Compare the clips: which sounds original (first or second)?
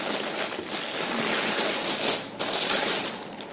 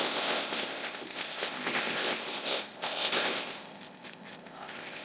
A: first